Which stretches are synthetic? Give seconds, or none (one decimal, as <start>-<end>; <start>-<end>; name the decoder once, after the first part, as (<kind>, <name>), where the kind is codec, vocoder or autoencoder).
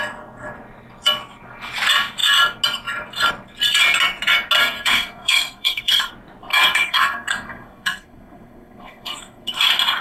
4.6-6.1 (codec, SNAC); 6.5-9.6